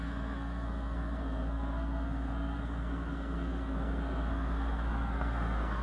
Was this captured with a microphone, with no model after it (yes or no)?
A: no